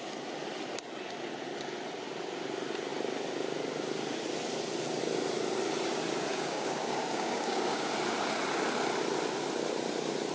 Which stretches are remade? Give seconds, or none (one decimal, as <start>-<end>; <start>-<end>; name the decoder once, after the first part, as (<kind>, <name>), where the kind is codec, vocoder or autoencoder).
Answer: 6.3-7.9 (codec, DAC)